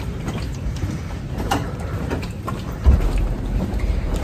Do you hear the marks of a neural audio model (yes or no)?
yes